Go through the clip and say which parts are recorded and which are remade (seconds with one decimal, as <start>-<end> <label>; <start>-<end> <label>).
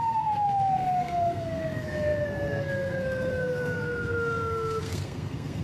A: 0.0-5.6 remade